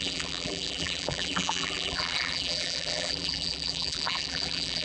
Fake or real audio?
fake